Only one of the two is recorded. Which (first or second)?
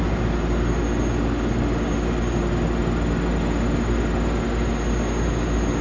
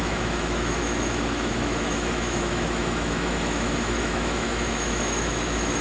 first